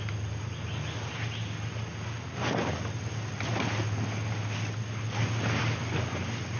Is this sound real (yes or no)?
yes